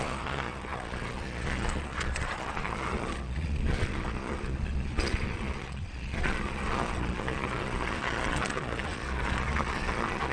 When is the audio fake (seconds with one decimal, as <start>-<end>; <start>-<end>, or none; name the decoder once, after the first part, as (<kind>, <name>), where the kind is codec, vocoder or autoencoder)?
0.0-10.3 (vocoder, Vocos)